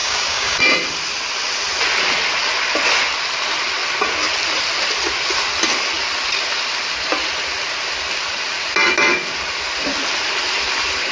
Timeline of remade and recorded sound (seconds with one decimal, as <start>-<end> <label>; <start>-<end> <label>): 0.0-0.6 remade; 0.6-11.1 recorded